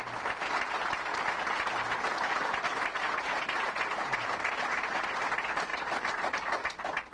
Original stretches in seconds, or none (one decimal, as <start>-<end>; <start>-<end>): 0.0-5.7; 6.3-7.1